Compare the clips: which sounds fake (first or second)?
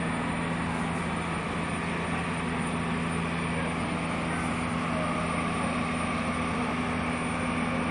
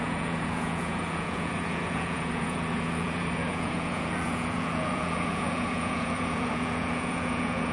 second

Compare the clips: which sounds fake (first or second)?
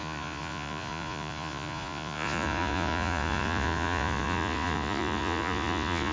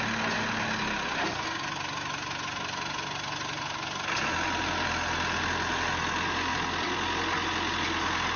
first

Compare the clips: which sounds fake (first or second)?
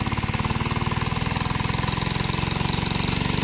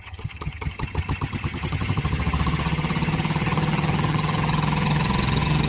second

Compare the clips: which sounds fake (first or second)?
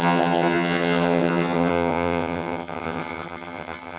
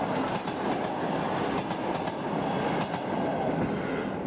first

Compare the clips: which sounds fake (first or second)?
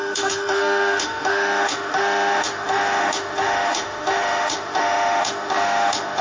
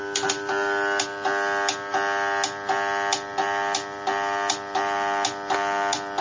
first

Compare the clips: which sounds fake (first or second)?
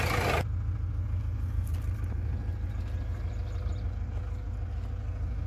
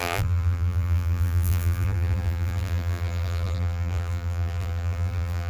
second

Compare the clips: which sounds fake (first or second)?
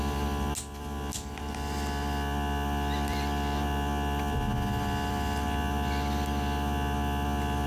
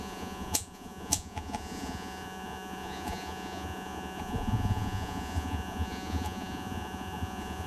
second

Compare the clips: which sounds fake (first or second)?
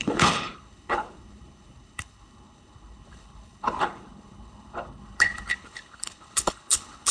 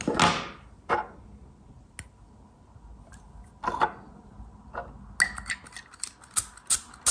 first